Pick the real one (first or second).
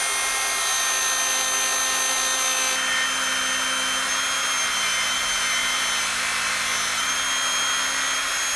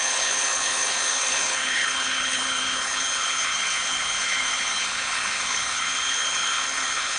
first